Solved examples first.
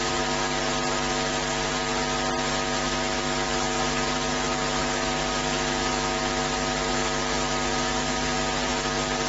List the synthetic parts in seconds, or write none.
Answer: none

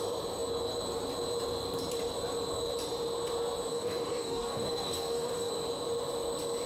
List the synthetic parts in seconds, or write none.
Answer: 3.7-5.5

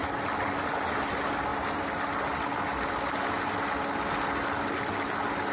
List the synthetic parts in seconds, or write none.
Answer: none

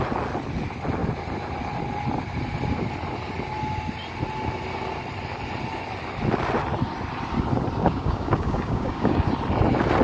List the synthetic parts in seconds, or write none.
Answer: 7.8-9.3

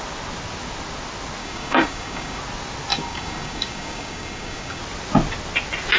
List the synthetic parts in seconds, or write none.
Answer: 1.4-2.4; 2.9-4.8

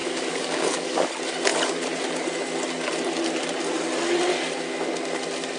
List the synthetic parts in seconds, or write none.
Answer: 0.0-1.1

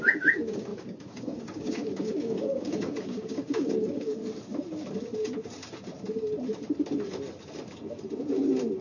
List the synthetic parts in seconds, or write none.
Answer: 0.0-4.2

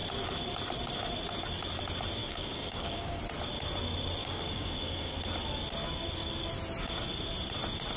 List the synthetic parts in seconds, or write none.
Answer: 2.2-3.2; 4.2-5.2